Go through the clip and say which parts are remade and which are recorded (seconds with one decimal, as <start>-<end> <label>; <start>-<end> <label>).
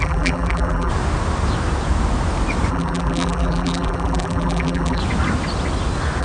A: 0.0-0.9 remade; 0.9-2.7 recorded; 2.7-5.0 remade; 5.0-6.2 recorded